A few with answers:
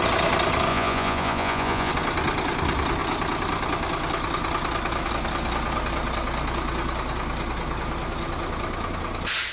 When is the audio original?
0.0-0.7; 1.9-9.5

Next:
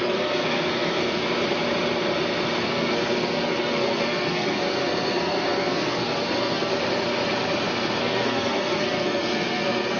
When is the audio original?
1.2-2.6; 6.7-8.0

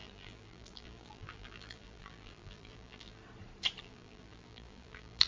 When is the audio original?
3.2-3.8